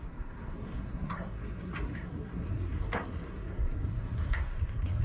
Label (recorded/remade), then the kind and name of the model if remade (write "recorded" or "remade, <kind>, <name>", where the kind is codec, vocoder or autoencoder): remade, codec, SNAC